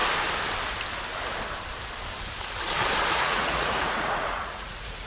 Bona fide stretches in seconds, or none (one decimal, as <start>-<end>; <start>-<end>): 0.0-3.1